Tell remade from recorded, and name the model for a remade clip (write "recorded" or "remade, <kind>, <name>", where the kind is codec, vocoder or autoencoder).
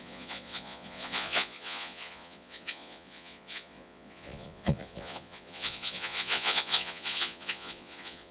remade, vocoder, Vocos